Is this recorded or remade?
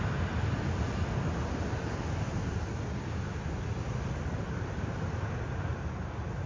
recorded